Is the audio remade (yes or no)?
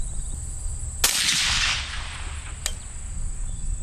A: no